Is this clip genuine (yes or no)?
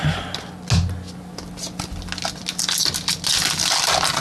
yes